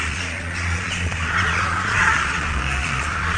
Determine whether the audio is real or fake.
fake